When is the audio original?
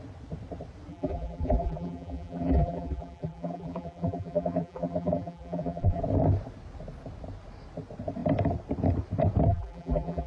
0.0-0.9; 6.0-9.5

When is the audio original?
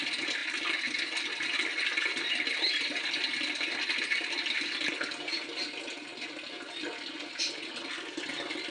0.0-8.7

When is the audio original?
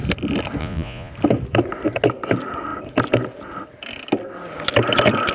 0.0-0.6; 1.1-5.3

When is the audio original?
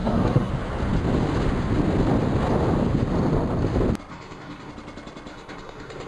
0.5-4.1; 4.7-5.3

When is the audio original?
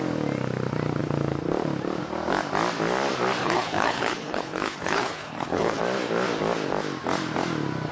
0.0-3.4; 5.8-7.9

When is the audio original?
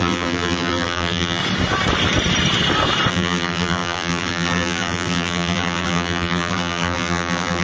1.4-3.1